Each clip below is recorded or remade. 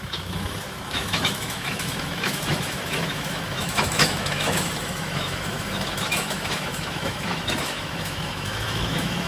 remade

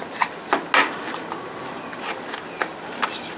recorded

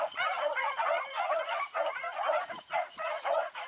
remade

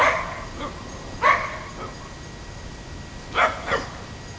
recorded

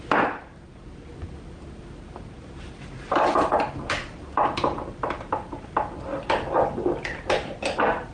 recorded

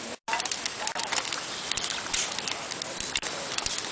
recorded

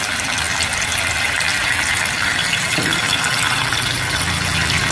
recorded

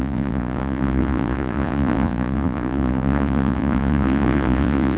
remade